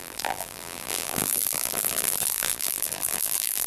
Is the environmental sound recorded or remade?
remade